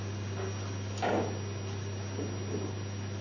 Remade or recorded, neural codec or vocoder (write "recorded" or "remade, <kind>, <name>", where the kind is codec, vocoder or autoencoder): recorded